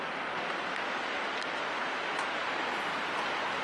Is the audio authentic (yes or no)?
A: no